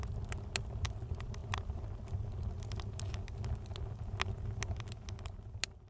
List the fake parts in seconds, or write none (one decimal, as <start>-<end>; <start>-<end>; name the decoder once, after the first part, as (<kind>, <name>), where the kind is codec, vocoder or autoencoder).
none